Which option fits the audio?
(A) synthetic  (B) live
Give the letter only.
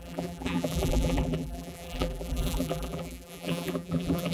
A